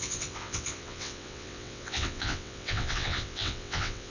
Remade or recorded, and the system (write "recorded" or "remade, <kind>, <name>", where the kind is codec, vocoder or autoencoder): remade, vocoder, WaveNeXt